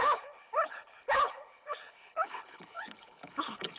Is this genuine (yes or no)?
no